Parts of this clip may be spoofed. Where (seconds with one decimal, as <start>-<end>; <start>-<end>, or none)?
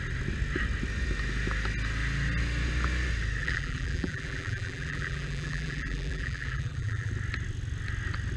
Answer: 3.4-7.1